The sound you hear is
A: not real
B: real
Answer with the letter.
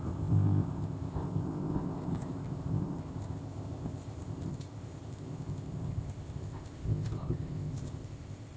A